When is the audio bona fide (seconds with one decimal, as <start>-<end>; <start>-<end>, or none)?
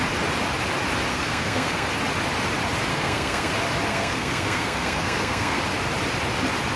0.0-1.1; 1.9-2.9; 3.5-3.9; 5.6-6.8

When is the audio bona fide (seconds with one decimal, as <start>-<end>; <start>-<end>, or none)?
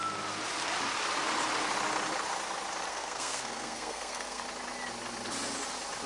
0.0-2.9; 4.4-6.1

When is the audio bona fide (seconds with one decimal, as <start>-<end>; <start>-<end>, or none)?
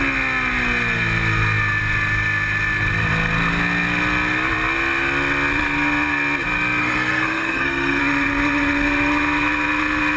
0.0-6.8; 8.0-10.2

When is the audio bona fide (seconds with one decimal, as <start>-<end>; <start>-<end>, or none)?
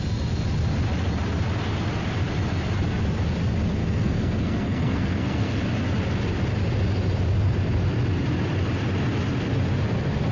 0.0-3.8; 5.6-10.3